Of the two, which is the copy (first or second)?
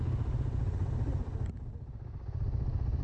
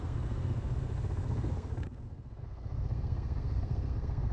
second